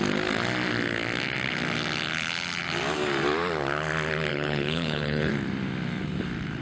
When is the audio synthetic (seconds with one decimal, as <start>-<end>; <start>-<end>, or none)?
4.3-5.3

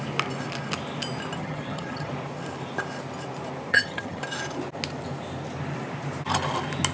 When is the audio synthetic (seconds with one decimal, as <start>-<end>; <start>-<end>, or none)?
1.4-2.1; 3.7-4.2